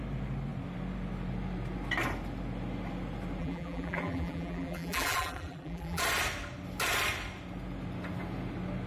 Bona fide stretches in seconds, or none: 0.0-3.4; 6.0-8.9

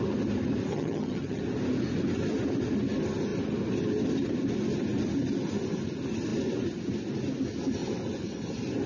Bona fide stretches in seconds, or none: 0.0-0.7; 1.4-8.9